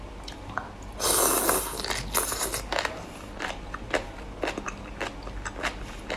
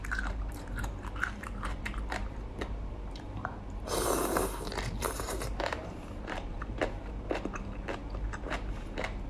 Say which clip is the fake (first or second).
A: second